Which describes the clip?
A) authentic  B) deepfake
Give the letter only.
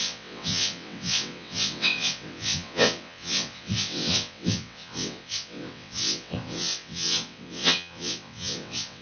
B